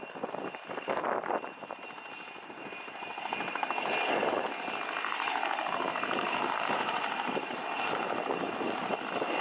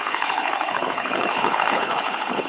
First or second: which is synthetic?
second